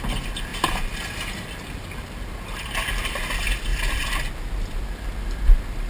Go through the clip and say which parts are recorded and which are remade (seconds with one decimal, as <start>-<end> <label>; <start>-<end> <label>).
0.0-5.9 recorded